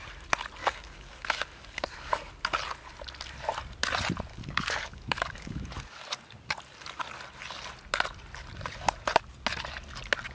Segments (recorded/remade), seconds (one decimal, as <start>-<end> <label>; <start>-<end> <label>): 0.0-0.6 recorded; 0.6-2.3 remade; 2.3-4.3 recorded; 4.3-6.0 remade; 6.0-10.3 recorded